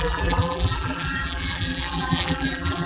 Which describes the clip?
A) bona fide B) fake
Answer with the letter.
B